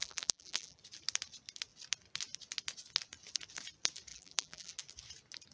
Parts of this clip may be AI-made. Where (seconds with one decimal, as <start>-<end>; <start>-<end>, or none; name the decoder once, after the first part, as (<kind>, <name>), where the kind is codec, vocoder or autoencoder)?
0.0-0.8 (vocoder, BigVGAN v2); 4.1-4.7